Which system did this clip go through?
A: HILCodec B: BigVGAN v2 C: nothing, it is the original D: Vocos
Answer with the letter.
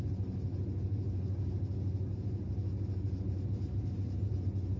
C